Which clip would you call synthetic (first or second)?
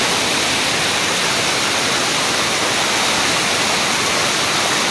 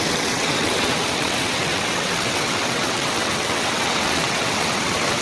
second